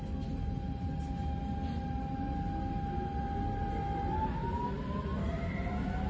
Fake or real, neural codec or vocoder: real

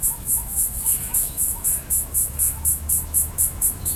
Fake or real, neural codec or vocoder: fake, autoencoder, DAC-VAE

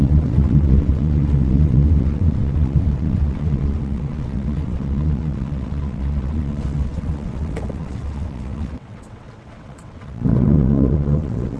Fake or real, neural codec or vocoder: fake, vocoder, WaveNeXt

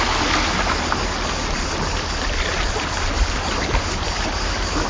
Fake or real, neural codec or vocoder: real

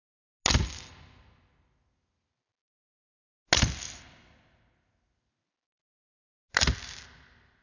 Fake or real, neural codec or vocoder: real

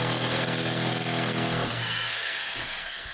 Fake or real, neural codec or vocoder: fake, codec, SNAC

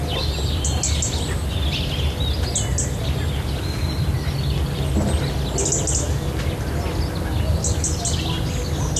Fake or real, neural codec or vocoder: real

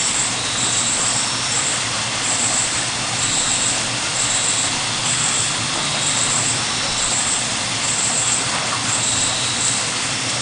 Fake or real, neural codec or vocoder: real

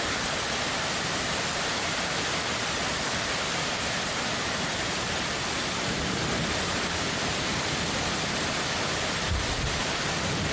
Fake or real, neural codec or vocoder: fake, vocoder, BigVGAN v2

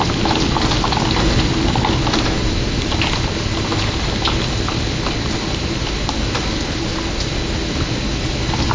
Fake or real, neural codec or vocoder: real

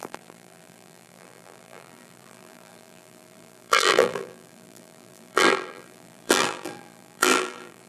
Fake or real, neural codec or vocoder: fake, vocoder, BigVGAN v2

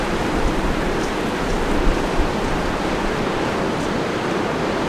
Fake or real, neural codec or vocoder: real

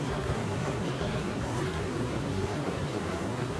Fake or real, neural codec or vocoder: fake, codec, SNAC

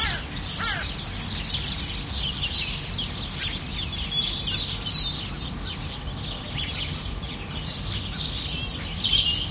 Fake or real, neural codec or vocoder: real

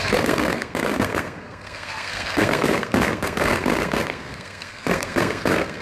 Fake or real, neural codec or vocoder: fake, codec, SNAC